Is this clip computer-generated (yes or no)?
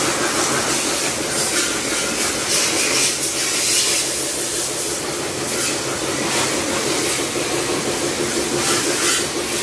no